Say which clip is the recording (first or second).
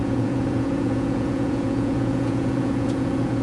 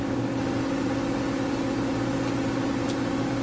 second